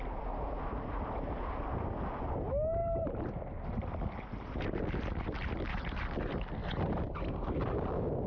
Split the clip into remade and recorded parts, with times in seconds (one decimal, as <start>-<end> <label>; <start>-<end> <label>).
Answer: 0.0-8.3 recorded